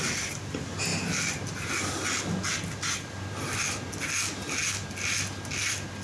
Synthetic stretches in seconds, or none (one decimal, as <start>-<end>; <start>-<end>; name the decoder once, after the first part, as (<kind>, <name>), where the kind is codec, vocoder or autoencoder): none